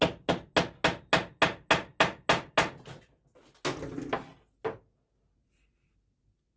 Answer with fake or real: real